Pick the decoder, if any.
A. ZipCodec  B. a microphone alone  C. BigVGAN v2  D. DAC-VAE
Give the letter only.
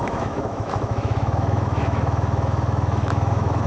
D